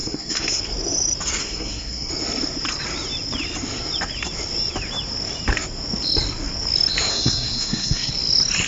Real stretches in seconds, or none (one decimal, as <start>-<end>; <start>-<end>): 0.6-1.4; 2.1-7.1; 8.1-8.7